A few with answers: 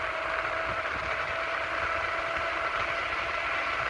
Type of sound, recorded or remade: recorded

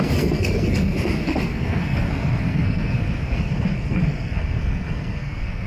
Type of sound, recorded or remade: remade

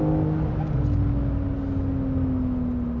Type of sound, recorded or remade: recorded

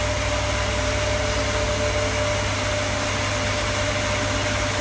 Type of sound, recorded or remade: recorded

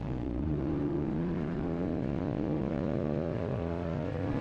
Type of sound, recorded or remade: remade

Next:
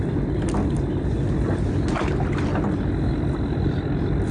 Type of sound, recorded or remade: recorded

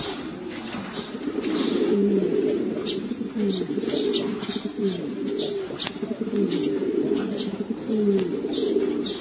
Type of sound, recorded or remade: recorded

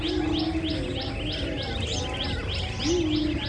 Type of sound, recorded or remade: recorded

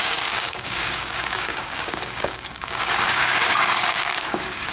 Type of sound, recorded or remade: remade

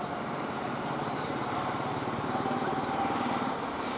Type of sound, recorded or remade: remade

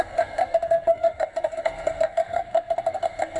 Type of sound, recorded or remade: remade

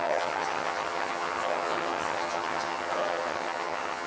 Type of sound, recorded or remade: remade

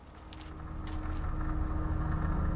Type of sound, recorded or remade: recorded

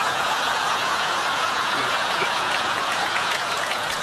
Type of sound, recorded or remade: remade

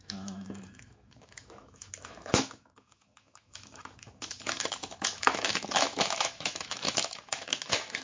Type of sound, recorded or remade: remade